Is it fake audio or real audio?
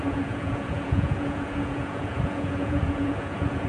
fake